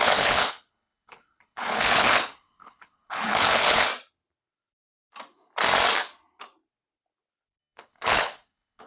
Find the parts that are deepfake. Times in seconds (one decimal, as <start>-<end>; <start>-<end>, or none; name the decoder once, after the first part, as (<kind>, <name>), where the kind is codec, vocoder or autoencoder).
0.0-3.9 (codec, HILCodec); 7.6-8.9